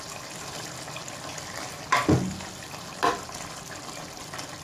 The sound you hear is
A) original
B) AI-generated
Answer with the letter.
A